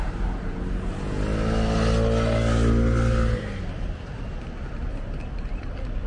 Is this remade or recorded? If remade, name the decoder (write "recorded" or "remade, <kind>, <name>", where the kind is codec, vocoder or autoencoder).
recorded